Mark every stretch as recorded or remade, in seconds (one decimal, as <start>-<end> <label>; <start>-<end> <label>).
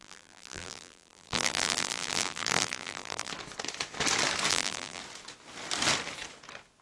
0.0-3.3 remade; 3.3-4.5 recorded; 4.5-5.0 remade; 5.0-6.8 recorded